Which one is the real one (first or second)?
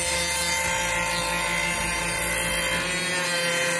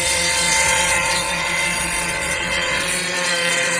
first